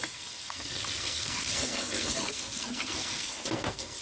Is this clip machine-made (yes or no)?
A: yes